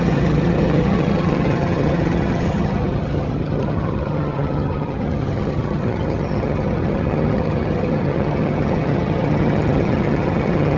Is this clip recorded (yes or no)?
no